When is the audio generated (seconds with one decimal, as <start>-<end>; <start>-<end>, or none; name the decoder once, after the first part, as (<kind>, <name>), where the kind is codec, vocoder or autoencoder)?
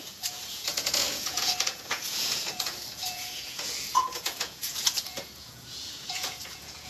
0.0-6.9 (vocoder, Vocos)